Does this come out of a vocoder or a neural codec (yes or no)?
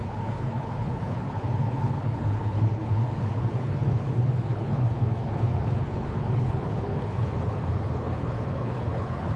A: yes